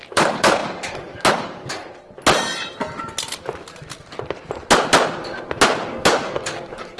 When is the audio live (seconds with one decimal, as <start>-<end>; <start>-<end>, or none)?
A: 1.8-5.9